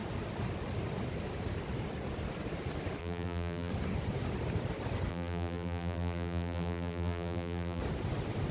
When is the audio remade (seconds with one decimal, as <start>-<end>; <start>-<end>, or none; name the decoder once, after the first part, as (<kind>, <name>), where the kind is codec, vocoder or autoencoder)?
3.0-3.7 (vocoder, BigVGAN v2); 5.1-7.8

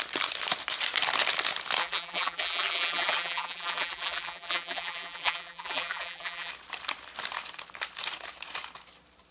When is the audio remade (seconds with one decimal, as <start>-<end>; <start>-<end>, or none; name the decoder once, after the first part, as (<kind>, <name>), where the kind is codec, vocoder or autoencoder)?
1.8-6.5 (vocoder, BigVGAN v2)

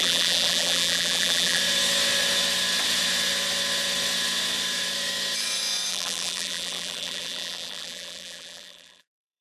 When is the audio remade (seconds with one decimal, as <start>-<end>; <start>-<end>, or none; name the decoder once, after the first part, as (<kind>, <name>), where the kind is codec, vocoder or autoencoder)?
0.0-1.6 (vocoder, BigVGAN v2); 5.9-9.4

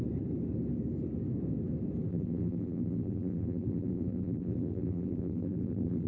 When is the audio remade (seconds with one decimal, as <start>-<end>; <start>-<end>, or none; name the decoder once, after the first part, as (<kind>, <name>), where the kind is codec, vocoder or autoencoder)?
2.1-6.1 (vocoder, BigVGAN v2)

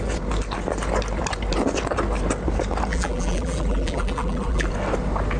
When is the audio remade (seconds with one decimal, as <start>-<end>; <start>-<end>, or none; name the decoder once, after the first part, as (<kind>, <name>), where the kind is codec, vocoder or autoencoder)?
2.9-4.7 (vocoder, BigVGAN v2)

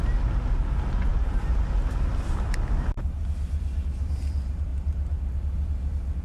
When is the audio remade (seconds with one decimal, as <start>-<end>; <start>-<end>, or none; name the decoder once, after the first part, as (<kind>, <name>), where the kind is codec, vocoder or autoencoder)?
1.1-1.7 (vocoder, BigVGAN v2); 2.1-3.2

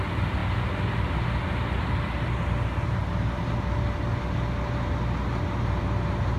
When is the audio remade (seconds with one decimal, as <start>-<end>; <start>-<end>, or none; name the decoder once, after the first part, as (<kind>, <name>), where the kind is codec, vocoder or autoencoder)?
none